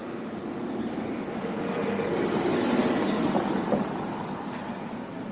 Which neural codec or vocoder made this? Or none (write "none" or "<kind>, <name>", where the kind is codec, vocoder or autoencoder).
none